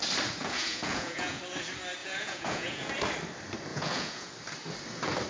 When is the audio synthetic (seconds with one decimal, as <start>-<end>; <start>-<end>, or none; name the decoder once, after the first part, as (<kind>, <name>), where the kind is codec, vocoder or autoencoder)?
0.4-1.4 (vocoder, Vocos); 2.0-2.9; 3.7-4.3